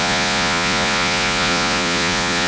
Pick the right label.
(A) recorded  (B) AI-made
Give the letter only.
B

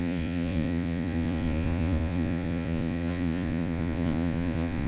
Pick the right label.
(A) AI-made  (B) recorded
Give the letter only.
A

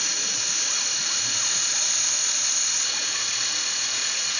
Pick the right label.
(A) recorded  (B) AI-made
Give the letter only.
A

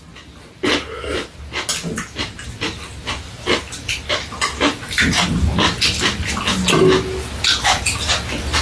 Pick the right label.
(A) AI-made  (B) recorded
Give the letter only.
B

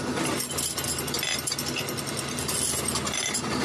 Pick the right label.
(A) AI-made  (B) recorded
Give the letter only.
B